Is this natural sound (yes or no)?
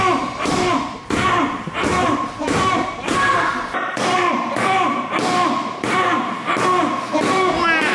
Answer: no